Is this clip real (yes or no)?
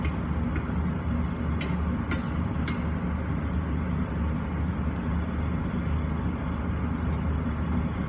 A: yes